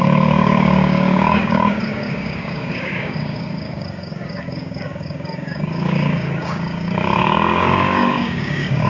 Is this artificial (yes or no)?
yes